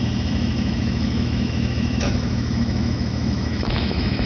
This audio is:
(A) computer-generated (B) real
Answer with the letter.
A